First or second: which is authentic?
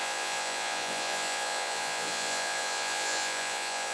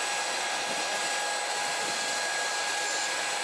second